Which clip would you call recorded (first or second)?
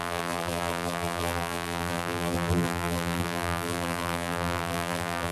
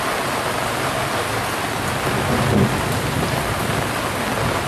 second